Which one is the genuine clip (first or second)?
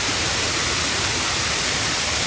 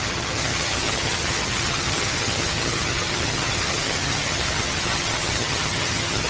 first